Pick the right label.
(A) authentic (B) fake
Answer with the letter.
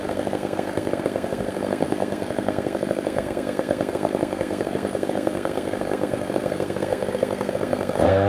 B